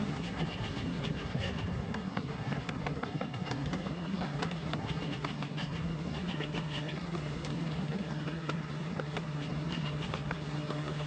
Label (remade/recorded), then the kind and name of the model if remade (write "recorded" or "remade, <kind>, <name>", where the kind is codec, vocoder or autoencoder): remade, codec, SNAC